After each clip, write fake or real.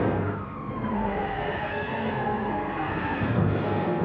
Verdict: fake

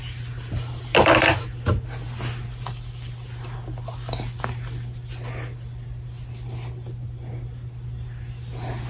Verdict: real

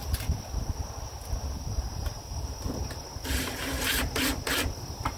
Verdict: real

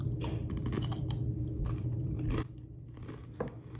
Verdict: real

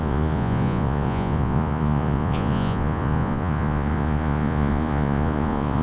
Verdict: fake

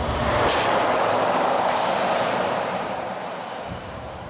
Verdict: fake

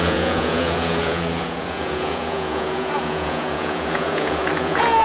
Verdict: fake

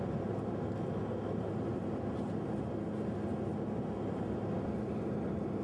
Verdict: real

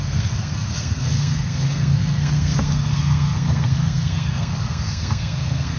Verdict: fake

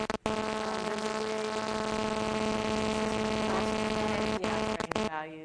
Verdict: real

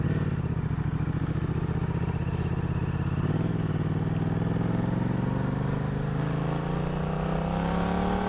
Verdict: real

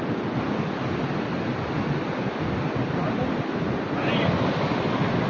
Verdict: real